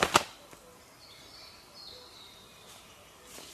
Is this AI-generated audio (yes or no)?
no